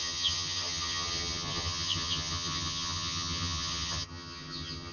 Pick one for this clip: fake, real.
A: fake